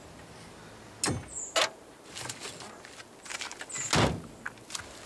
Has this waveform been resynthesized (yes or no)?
no